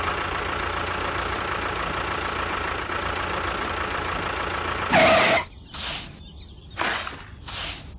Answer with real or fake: real